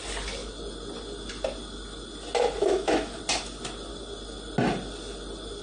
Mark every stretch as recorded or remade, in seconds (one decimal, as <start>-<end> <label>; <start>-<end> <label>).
0.0-2.6 recorded; 2.6-3.2 remade; 3.2-5.6 recorded